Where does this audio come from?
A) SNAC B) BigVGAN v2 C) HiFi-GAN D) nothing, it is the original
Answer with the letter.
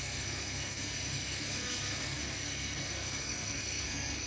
A